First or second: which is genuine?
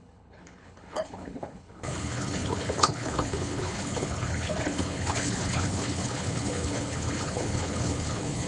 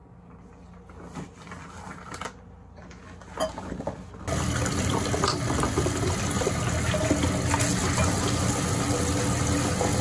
second